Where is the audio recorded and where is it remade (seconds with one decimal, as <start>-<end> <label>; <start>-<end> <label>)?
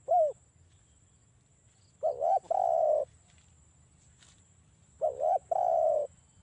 0.0-5.4 recorded; 5.4-5.9 remade; 5.9-6.4 recorded